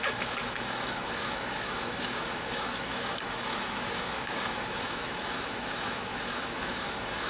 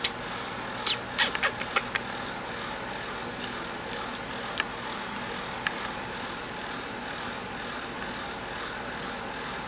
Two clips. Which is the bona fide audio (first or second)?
second